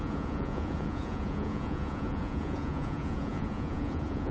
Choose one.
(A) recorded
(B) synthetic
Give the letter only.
B